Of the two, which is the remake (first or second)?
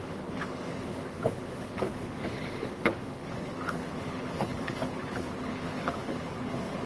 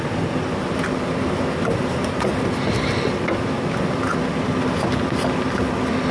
first